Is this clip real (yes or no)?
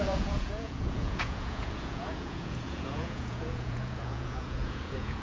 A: no